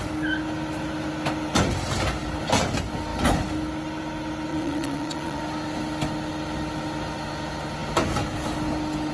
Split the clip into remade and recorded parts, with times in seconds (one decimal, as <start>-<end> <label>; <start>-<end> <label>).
0.0-4.5 recorded; 4.5-5.4 remade; 5.4-9.1 recorded